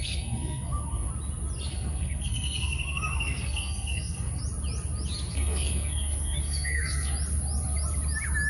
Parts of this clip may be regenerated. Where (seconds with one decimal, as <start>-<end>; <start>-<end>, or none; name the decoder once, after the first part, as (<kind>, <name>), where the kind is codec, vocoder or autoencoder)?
0.0-1.1 (codec, SNAC); 1.7-4.4; 5.3-7.1